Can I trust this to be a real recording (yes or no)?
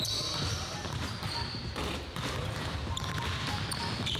no